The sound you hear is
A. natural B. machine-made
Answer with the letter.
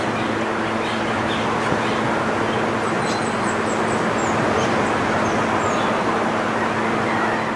A